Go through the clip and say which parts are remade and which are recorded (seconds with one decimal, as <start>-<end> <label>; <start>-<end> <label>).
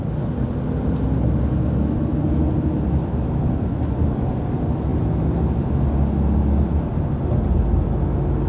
0.0-8.5 recorded